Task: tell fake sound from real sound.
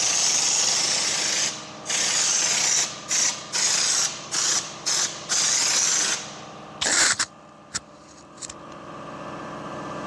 real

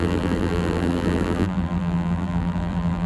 fake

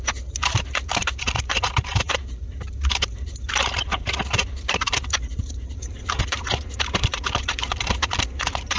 fake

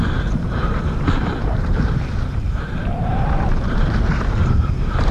fake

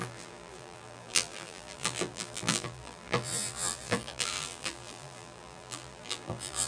fake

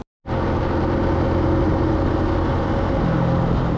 real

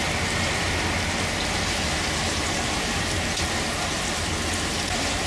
real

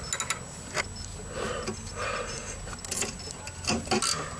real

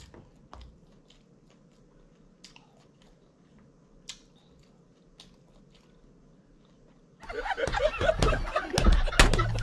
real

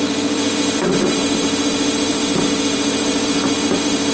fake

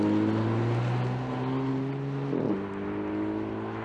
real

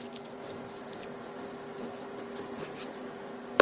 real